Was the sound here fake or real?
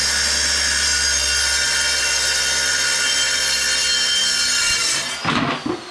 real